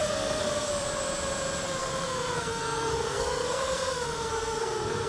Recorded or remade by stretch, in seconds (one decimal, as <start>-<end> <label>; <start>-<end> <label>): 0.0-0.7 remade; 0.7-1.8 recorded; 1.8-5.1 remade